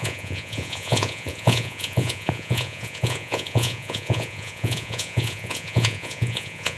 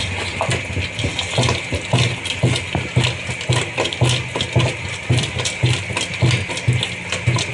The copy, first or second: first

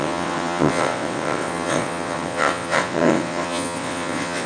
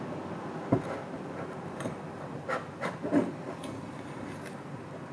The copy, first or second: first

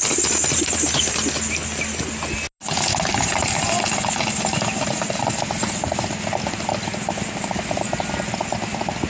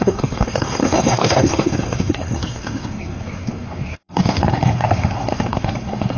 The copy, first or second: second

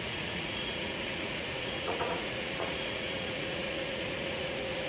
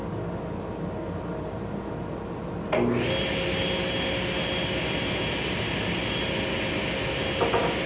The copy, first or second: first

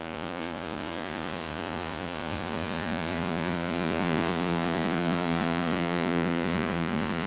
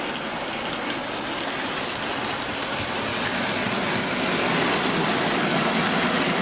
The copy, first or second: first